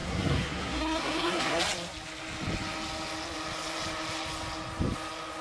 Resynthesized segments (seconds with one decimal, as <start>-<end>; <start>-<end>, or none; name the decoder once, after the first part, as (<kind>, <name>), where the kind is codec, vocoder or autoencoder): 0.0-1.6 (codec, SNAC)